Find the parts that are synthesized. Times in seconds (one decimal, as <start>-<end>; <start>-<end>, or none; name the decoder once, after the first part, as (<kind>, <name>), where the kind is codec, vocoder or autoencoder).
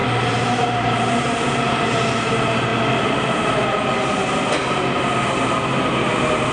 0.0-2.3 (vocoder, BigVGAN v2)